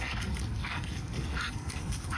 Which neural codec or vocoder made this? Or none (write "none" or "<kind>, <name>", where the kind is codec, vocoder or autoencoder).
codec, SNAC